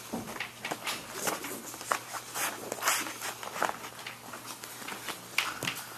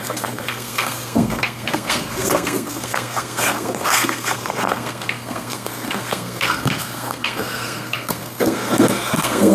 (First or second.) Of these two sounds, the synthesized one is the second